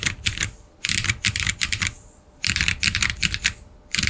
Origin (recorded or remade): recorded